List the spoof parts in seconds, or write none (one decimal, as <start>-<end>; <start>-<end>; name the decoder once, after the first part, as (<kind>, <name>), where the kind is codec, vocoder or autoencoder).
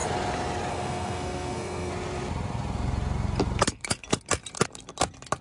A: 0.7-1.9 (codec, SNAC)